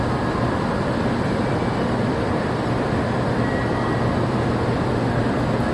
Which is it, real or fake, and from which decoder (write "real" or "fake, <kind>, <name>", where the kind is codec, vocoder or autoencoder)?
fake, vocoder, BigVGAN v2